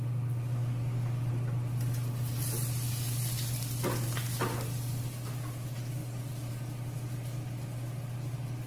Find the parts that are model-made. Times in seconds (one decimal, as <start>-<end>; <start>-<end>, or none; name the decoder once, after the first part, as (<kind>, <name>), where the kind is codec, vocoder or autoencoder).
0.5-1.3 (codec, DAC)